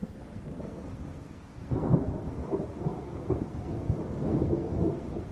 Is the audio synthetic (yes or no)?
yes